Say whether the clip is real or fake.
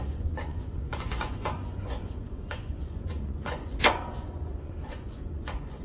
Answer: fake